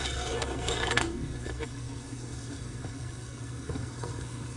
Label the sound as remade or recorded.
remade